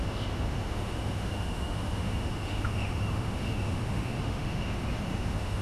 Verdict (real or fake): fake